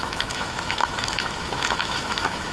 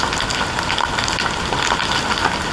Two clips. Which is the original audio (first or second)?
second